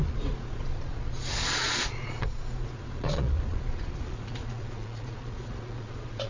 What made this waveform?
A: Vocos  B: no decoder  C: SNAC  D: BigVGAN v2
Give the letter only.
A